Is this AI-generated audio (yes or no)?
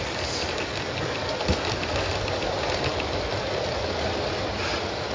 no